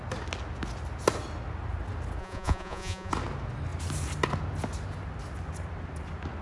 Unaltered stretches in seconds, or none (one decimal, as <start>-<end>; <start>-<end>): 0.0-2.2; 3.1-6.4